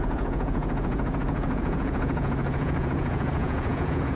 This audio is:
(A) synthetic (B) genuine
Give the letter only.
A